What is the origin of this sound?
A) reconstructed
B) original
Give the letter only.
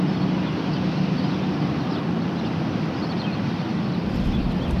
B